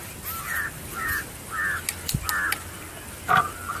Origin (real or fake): real